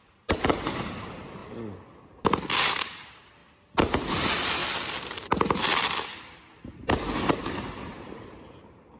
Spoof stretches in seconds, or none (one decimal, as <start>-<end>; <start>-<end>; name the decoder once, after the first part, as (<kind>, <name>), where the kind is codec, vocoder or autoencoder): 0.0-1.4 (vocoder, BigVGAN v2); 2.6-3.4; 4.1-4.6; 5.1-5.7; 7.2-9.0